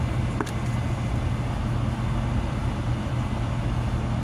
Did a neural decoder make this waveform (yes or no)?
no